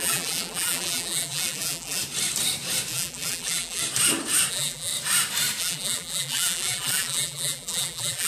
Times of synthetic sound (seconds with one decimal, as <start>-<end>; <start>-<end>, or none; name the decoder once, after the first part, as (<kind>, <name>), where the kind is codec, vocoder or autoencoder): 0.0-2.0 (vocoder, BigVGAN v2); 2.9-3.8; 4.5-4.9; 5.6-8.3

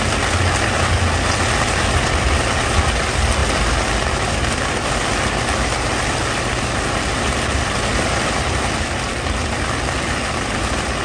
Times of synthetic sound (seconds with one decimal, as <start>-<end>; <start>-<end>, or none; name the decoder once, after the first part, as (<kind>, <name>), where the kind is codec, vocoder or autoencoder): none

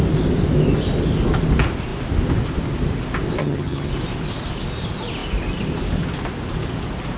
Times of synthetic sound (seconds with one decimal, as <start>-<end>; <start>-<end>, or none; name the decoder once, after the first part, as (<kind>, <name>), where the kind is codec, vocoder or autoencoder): 3.4-3.9 (vocoder, HiFi-GAN)

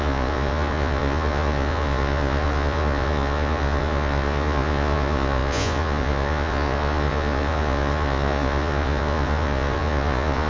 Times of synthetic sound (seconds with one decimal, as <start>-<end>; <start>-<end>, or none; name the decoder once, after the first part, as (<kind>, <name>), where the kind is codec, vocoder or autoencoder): 0.0-10.5 (vocoder, Vocos)

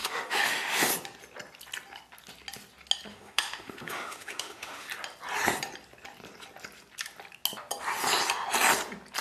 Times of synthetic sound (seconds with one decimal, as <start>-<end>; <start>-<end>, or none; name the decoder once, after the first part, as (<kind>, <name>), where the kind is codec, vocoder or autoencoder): 0.0-0.9 (autoencoder, DAC-VAE); 3.1-4.9

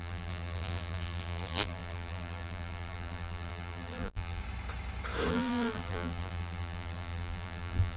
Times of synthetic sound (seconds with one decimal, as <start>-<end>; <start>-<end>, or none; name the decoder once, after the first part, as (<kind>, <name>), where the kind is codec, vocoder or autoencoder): 0.0-4.4 (vocoder, BigVGAN v2); 5.3-8.0

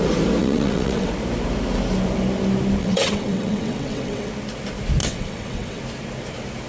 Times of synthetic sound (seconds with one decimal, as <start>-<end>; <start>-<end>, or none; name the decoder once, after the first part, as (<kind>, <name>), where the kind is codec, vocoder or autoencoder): 0.4-1.1 (vocoder, WaveNeXt); 2.8-4.3; 5.0-5.8